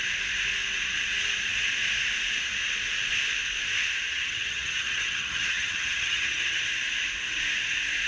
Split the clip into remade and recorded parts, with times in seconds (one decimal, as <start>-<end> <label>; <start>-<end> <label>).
0.0-4.1 recorded; 4.1-6.7 remade; 6.7-8.1 recorded

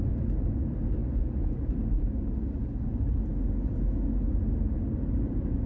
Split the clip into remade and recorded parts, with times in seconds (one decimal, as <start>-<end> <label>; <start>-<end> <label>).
0.0-5.7 recorded

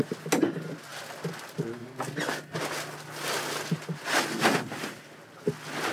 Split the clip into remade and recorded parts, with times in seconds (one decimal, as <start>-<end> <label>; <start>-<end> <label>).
0.0-5.9 recorded

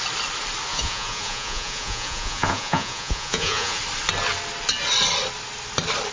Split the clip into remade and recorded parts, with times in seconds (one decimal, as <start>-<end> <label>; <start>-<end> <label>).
0.0-0.7 recorded; 0.7-3.8 remade; 3.8-6.1 recorded